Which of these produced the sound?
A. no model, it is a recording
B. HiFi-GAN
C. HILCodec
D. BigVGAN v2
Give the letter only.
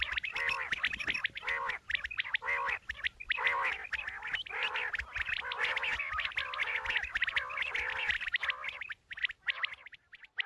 A